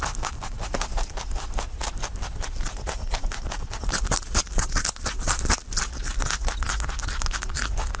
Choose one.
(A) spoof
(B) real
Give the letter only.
B